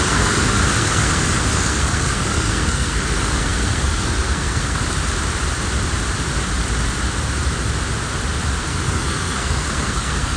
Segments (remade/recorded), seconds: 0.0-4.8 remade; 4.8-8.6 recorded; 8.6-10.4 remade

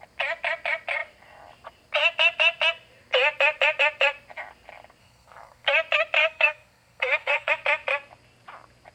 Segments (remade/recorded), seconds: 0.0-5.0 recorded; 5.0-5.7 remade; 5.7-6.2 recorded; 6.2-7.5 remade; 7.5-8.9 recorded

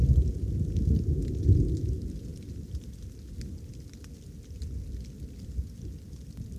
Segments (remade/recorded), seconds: 0.0-6.6 recorded

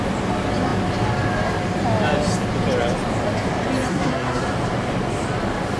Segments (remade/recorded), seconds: 0.0-3.9 recorded; 3.9-4.4 remade; 4.4-5.8 recorded